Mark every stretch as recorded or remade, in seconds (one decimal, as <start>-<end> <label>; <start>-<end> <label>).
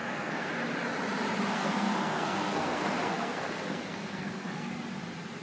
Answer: 0.0-0.5 remade; 0.5-1.5 recorded; 1.5-4.7 remade; 4.7-5.4 recorded